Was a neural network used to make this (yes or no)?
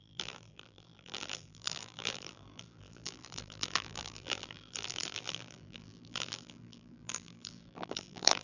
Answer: yes